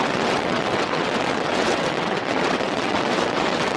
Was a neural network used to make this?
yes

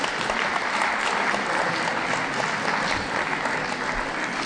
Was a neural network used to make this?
no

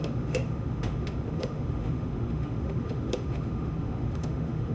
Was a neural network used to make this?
yes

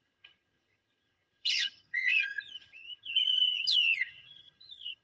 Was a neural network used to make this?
yes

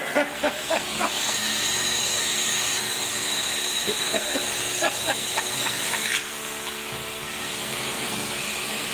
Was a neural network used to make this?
yes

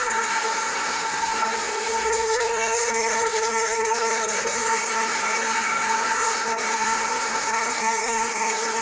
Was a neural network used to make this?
yes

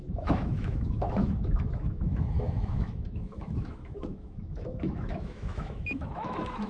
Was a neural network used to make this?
yes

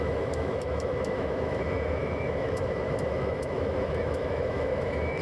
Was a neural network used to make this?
yes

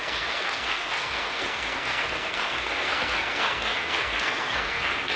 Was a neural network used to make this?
yes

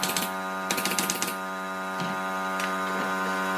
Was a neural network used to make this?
no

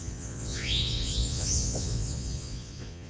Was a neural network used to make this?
yes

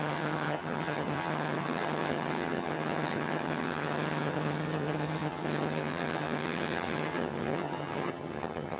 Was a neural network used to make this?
yes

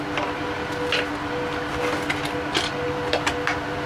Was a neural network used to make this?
no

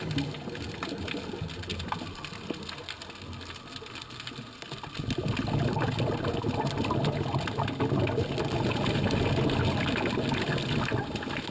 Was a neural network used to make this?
no